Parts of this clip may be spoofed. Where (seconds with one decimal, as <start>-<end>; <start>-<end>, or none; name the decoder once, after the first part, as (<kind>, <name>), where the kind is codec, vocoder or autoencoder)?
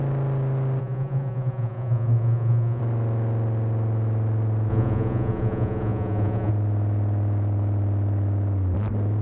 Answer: 0.8-2.8 (vocoder, Vocos); 4.7-6.5